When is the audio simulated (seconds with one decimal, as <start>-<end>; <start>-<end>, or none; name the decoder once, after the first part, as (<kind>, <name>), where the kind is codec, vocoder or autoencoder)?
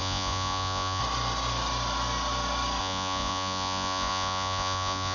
0.0-1.0 (vocoder, Vocos); 2.8-5.1